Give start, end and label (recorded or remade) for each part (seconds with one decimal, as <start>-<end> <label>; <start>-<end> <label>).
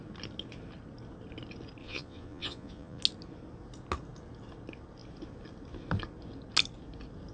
0.0-1.8 recorded; 1.8-3.0 remade; 3.0-7.3 recorded